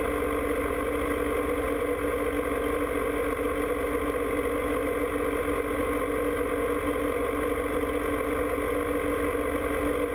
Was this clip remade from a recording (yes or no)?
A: no